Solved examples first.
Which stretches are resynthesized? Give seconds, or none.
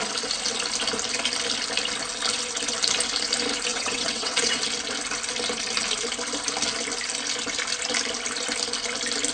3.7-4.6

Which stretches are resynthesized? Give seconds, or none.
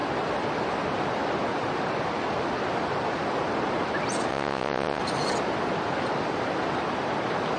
4.3-5.0